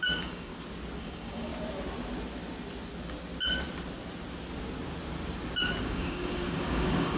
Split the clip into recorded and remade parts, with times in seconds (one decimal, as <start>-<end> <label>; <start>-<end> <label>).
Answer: 0.0-0.5 remade; 0.5-1.0 recorded; 1.0-1.5 remade; 1.5-5.8 recorded; 5.8-7.2 remade